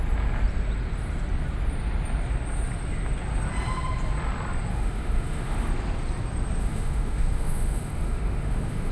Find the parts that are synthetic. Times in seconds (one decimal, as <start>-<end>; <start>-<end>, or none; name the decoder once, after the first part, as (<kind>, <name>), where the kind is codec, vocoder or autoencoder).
4.7-5.7 (autoencoder, DAC-VAE); 6.6-8.9